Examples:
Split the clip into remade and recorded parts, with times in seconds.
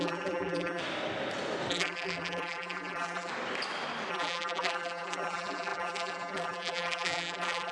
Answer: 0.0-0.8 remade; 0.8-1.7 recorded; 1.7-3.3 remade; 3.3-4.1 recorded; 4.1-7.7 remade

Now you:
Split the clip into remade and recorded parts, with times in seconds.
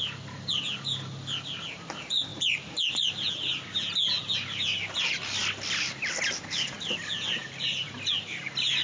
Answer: 0.0-5.4 remade; 5.4-6.9 recorded; 6.9-8.8 remade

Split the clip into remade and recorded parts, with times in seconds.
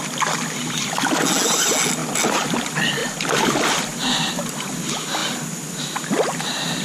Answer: 0.0-3.0 recorded; 3.0-4.3 remade; 4.3-6.8 recorded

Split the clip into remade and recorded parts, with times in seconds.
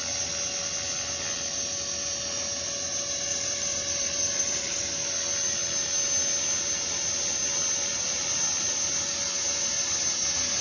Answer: 0.0-3.3 recorded; 3.3-4.9 remade; 4.9-10.6 recorded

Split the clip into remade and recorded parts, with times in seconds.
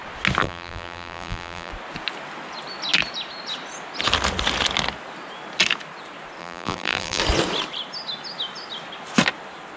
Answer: 0.0-0.4 recorded; 0.4-1.7 remade; 1.7-6.4 recorded; 6.4-7.2 remade; 7.2-9.8 recorded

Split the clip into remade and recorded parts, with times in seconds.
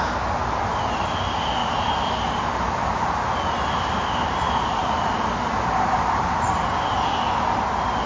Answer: 0.0-1.6 recorded; 1.6-6.5 remade; 6.5-8.1 recorded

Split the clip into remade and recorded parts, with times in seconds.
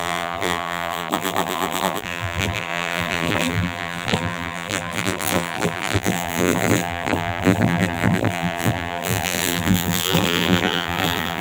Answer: 0.0-11.4 remade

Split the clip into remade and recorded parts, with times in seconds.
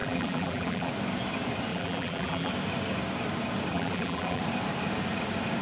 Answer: 0.0-0.9 remade; 0.9-1.7 recorded; 1.7-2.5 remade; 2.5-3.7 recorded; 3.7-4.4 remade; 4.4-5.6 recorded